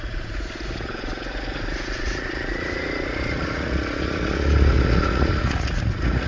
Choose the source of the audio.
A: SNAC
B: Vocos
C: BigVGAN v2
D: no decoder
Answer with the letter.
B